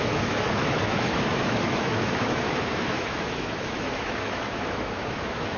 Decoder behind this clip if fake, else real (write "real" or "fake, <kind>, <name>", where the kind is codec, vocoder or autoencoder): fake, autoencoder, DAC-VAE